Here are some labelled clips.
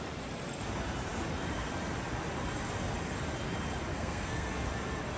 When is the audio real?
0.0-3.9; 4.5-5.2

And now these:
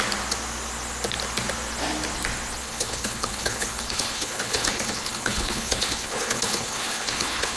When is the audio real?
0.0-2.6

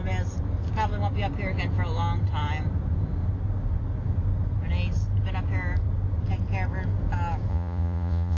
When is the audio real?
0.0-7.5

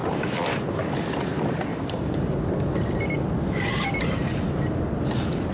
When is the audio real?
0.0-1.7; 2.3-5.5

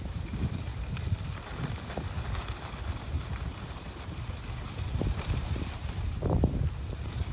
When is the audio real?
0.7-5.1

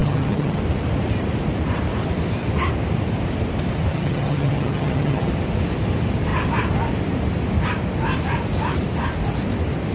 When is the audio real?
0.6-3.9; 5.3-9.9

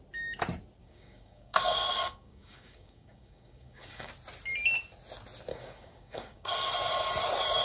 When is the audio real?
0.0-0.8; 4.1-5.5; 6.7-7.6